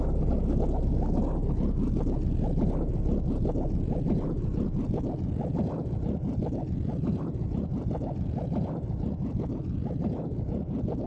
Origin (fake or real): real